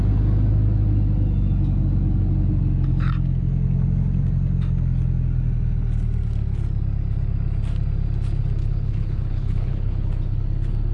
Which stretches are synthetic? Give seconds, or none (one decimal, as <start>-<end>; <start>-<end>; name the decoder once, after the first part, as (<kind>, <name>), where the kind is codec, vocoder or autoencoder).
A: 8.6-10.1 (codec, HILCodec)